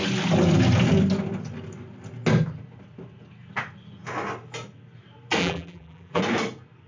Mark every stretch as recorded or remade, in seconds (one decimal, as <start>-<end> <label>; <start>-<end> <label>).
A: 0.0-5.4 recorded; 5.4-6.2 remade; 6.2-6.9 recorded